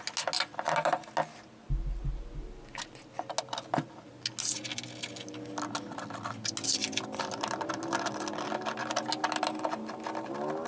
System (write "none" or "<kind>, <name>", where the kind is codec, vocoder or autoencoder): none